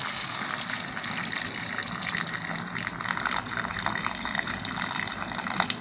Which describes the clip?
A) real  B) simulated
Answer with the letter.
A